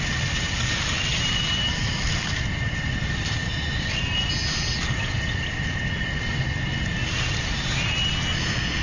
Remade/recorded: remade